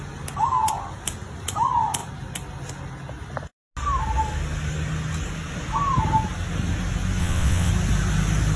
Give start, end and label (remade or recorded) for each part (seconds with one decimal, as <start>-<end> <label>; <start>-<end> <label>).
0.0-7.2 recorded; 7.2-7.7 remade; 7.7-8.6 recorded

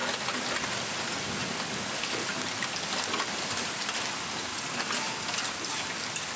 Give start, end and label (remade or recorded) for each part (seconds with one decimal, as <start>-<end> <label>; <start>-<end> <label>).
0.0-6.4 recorded